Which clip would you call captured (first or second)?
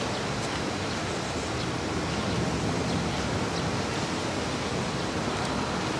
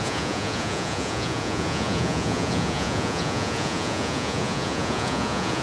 first